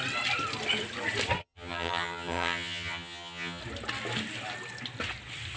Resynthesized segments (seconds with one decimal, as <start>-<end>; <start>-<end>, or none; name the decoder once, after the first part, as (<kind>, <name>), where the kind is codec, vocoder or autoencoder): 1.4-3.6 (vocoder, HiFi-GAN)